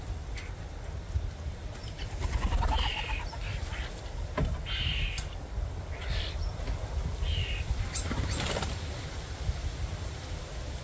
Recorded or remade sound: recorded